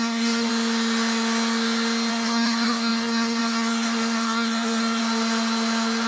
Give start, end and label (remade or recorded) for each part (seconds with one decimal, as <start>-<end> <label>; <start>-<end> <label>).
0.0-0.5 remade; 0.5-2.1 recorded; 2.1-5.0 remade; 5.0-6.1 recorded